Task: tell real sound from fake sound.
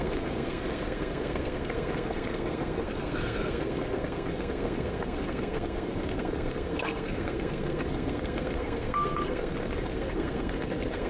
fake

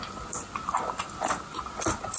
real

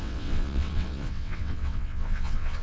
fake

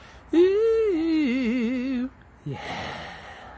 real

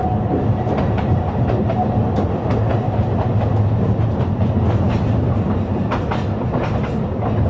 real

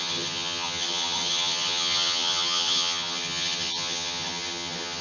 fake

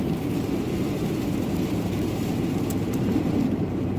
fake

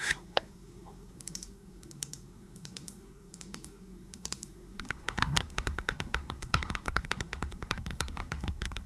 fake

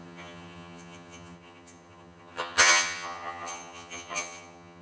fake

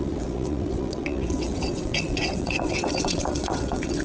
fake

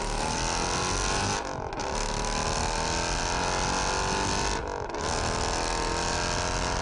real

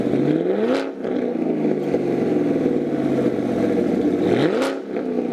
real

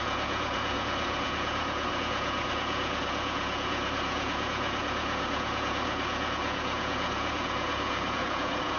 fake